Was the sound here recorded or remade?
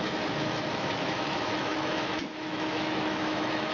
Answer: remade